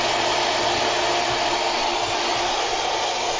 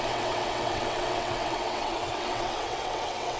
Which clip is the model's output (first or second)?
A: second